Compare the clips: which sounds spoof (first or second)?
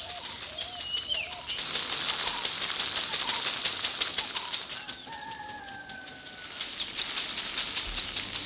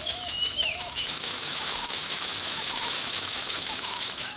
second